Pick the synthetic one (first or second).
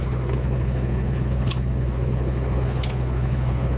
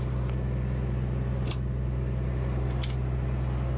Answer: first